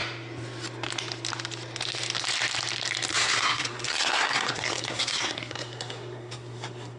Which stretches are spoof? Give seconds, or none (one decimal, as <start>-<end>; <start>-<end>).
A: 3.1-7.0